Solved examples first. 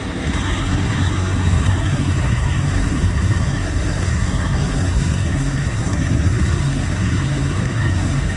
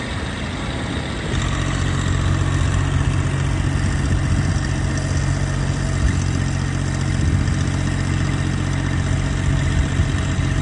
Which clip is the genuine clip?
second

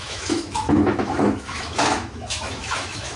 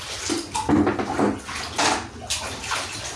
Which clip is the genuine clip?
second